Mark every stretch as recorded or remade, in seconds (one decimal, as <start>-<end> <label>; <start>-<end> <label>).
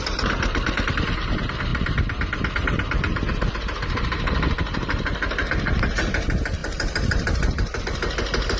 0.0-6.6 recorded; 6.6-7.8 remade; 7.8-8.6 recorded